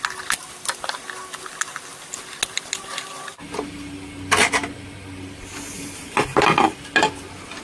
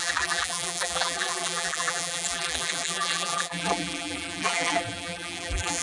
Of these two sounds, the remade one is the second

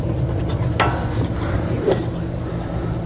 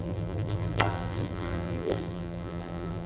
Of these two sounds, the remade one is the second